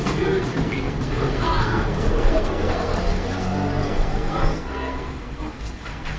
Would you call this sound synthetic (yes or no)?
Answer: yes